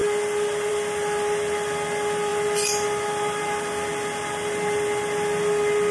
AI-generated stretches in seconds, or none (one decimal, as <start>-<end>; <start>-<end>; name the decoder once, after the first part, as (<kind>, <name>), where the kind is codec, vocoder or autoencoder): none